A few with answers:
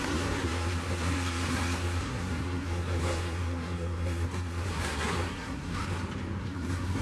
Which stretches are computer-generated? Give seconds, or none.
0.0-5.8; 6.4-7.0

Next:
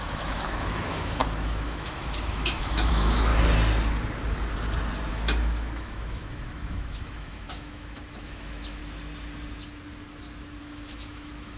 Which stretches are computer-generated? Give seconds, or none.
0.0-3.3; 5.1-8.8; 10.6-11.6